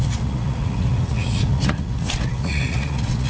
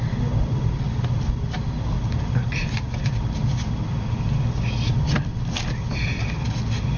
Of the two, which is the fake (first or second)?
first